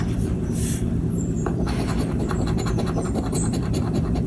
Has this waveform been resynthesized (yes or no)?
yes